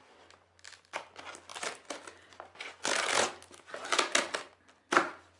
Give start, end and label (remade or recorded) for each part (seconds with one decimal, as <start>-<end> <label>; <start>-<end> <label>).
0.0-5.4 recorded